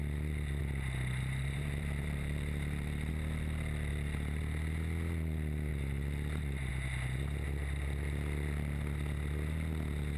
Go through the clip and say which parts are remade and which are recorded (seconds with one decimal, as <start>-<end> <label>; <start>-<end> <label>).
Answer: 0.0-0.6 recorded; 0.6-3.1 remade; 3.1-5.7 recorded; 5.7-6.7 remade; 6.7-10.2 recorded